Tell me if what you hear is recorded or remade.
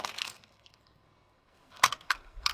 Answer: remade